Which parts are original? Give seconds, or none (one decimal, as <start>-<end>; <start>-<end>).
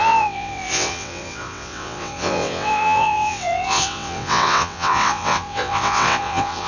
none